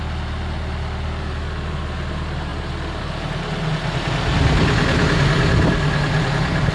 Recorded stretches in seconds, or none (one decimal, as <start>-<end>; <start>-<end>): 0.0-6.7